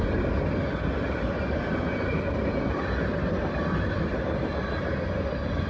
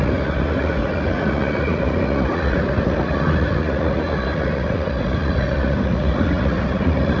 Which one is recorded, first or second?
first